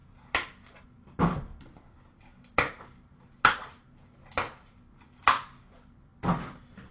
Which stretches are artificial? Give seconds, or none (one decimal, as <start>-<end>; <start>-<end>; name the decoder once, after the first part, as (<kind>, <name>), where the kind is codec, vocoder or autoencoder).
0.8-1.5 (vocoder, BigVGAN v2); 5.6-6.1